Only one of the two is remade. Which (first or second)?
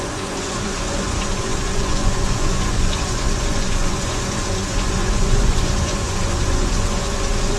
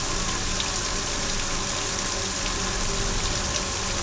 first